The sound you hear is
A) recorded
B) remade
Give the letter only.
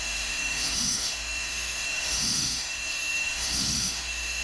B